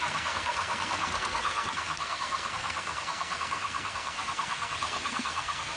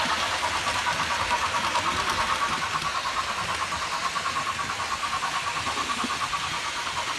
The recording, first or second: second